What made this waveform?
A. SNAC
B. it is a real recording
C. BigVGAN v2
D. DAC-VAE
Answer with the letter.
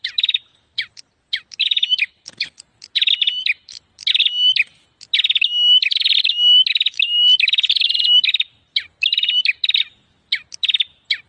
B